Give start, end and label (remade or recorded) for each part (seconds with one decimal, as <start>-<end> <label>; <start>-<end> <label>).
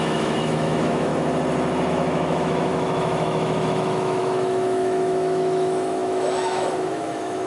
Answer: 0.0-1.1 remade; 1.1-1.9 recorded; 1.9-7.5 remade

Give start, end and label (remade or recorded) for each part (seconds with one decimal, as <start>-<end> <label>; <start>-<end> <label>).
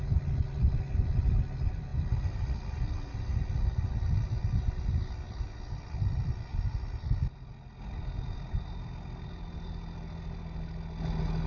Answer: 0.0-11.5 recorded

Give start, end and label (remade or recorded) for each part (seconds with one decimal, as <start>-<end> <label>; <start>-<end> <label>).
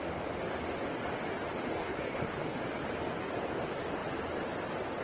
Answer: 0.0-1.8 recorded; 1.8-2.6 remade; 2.6-5.0 recorded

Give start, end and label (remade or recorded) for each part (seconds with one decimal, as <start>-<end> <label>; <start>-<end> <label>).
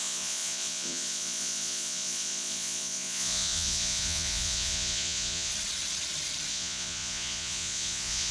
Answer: 0.0-5.5 remade; 5.5-6.5 recorded; 6.5-8.3 remade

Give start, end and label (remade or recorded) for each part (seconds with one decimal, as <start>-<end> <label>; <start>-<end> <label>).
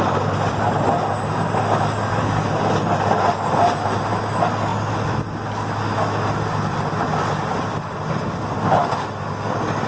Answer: 0.0-2.1 recorded; 2.1-2.6 remade; 2.6-9.9 recorded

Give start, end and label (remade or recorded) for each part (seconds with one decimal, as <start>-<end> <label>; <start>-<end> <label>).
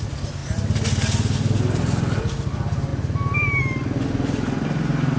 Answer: 0.0-5.2 recorded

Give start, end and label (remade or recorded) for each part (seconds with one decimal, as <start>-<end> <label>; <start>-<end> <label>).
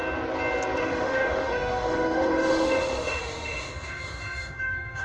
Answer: 0.0-0.8 recorded; 0.8-5.0 remade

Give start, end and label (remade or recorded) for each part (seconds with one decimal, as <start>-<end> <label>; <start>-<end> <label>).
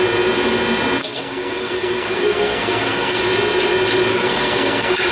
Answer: 0.0-1.0 recorded; 1.0-3.2 remade; 3.2-4.1 recorded; 4.1-5.1 remade